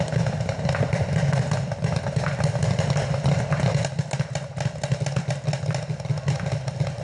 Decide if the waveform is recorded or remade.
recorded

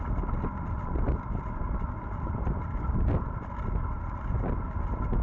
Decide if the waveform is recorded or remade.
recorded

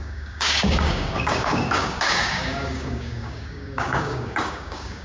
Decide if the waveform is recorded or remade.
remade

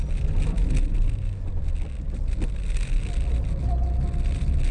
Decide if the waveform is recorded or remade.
recorded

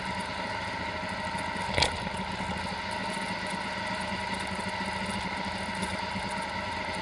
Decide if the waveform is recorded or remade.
recorded